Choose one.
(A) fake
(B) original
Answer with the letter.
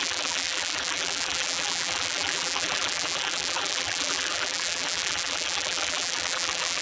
A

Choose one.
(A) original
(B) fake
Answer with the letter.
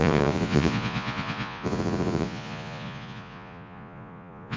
B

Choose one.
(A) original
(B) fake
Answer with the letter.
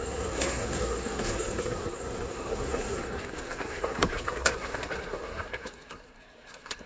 B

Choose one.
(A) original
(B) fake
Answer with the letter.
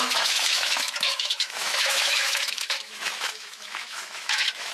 B